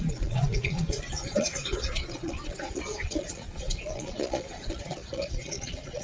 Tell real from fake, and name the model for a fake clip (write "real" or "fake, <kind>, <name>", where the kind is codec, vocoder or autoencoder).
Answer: fake, vocoder, Vocos